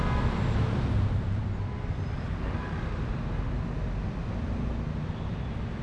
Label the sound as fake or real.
real